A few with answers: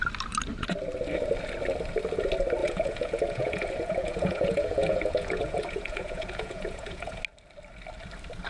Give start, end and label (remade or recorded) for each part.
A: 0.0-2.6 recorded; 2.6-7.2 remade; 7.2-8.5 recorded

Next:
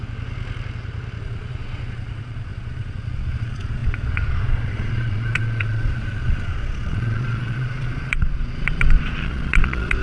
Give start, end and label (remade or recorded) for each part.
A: 0.0-1.2 recorded; 1.2-10.0 remade

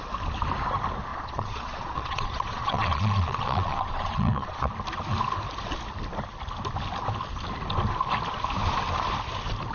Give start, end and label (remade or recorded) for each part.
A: 0.0-1.1 recorded; 1.1-4.7 remade; 4.7-9.7 recorded

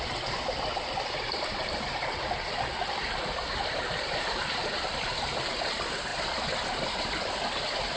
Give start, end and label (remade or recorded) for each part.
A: 0.0-8.0 recorded